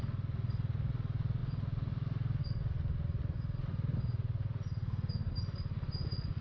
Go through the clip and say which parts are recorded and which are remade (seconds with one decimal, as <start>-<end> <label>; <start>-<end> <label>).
0.0-6.4 recorded